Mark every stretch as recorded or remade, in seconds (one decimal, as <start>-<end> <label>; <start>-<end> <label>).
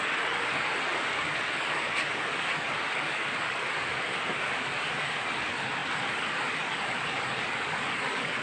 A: 0.0-8.4 remade